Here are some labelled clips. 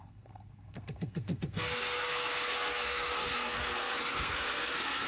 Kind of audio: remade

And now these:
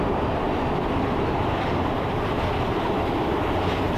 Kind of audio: recorded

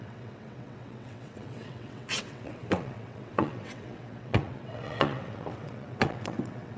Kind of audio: remade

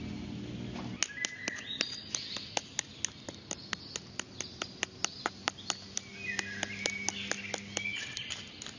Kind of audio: recorded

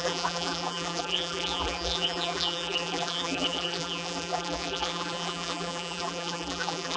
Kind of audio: remade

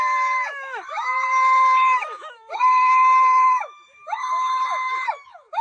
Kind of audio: remade